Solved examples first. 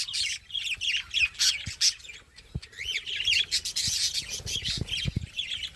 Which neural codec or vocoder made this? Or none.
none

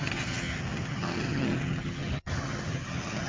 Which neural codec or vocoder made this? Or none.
vocoder, HiFi-GAN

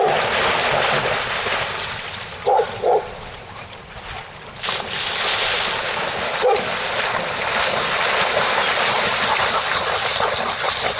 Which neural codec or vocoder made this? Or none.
none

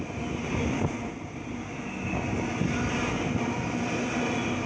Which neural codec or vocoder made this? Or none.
none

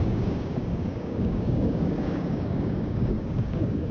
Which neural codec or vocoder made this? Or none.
codec, DAC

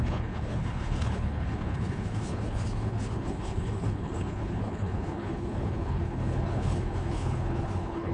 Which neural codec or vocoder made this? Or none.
codec, HILCodec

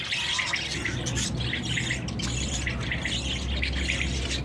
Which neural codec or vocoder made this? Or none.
none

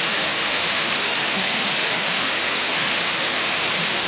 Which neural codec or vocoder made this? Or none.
autoencoder, DAC-VAE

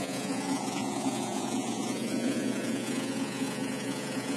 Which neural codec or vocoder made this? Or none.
vocoder, Vocos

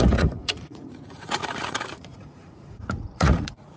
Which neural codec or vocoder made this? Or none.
vocoder, Vocos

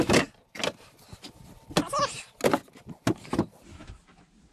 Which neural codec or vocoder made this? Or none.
none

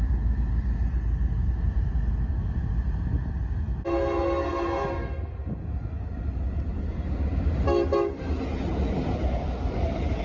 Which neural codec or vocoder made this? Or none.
none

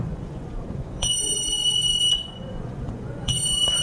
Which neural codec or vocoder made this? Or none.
vocoder, Vocos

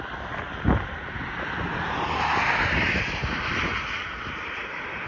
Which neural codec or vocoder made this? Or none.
none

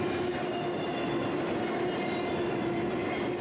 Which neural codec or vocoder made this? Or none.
none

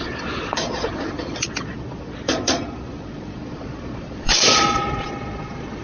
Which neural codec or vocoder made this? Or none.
vocoder, Vocos